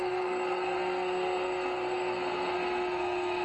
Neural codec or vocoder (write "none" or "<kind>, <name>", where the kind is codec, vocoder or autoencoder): codec, SNAC